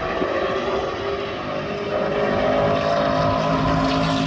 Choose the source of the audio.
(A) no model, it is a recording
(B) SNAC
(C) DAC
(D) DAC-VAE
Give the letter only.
A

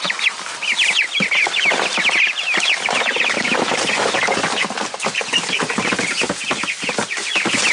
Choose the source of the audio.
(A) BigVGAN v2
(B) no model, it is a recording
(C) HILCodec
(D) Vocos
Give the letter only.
B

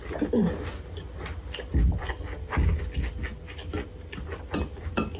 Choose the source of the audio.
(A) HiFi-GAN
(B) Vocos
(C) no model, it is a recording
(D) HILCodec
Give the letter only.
C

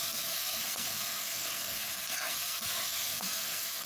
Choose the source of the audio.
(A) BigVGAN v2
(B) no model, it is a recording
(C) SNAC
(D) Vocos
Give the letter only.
C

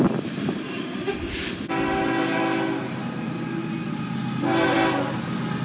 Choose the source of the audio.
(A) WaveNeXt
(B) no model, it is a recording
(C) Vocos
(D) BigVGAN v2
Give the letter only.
B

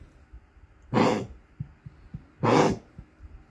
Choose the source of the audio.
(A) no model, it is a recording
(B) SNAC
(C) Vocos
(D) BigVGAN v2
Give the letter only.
A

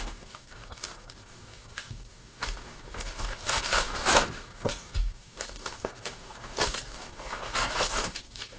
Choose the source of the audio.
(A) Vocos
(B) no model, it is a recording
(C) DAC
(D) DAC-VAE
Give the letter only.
C